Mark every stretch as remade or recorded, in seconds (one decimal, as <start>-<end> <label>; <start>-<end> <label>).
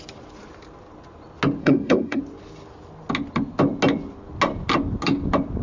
0.0-1.6 recorded; 1.6-2.2 remade; 2.2-5.6 recorded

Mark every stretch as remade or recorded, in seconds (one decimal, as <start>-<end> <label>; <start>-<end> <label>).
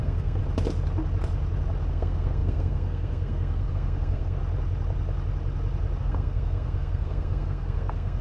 0.0-0.4 remade; 0.4-1.9 recorded; 1.9-4.4 remade; 4.4-6.0 recorded; 6.0-8.2 remade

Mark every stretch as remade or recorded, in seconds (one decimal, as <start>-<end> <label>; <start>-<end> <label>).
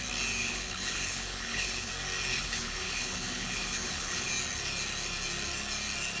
0.0-0.4 recorded; 0.4-1.9 remade; 1.9-2.3 recorded; 2.3-4.3 remade; 4.3-6.2 recorded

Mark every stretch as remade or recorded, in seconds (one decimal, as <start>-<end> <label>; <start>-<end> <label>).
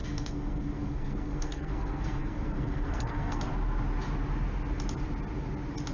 0.0-3.4 remade; 3.4-5.9 recorded